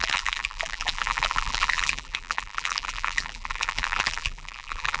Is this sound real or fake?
fake